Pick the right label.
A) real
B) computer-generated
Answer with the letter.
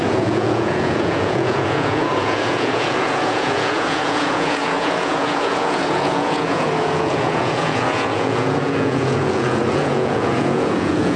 B